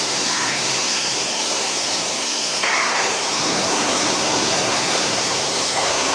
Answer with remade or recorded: remade